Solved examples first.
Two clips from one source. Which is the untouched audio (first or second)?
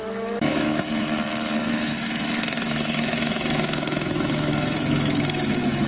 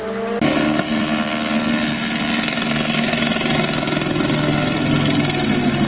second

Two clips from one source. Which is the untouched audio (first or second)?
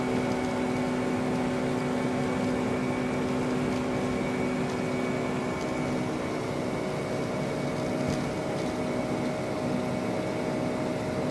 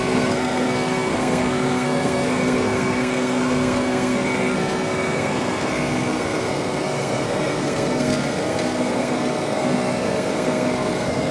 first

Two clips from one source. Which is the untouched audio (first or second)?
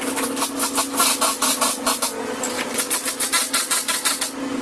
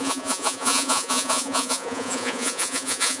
first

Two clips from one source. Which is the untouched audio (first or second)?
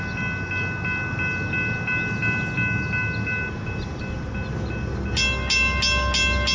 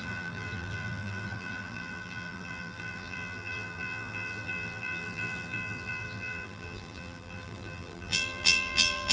first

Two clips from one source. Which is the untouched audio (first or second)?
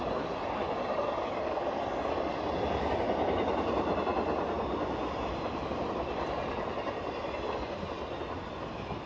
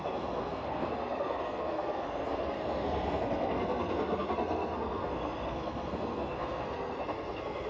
first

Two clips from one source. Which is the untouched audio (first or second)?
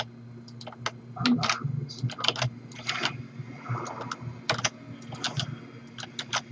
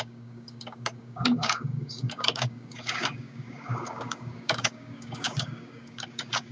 first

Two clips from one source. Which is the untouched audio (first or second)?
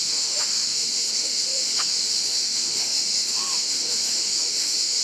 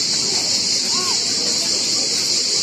second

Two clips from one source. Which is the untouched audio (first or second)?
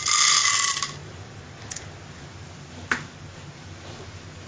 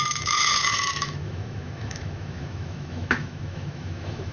first